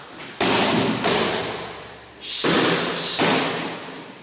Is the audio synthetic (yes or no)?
no